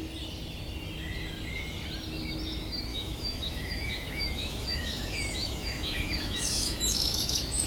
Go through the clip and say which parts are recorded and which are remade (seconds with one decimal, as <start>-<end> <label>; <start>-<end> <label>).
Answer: 0.0-2.9 recorded; 2.9-7.7 remade